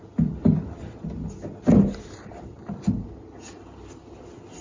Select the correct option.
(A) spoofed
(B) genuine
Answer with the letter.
B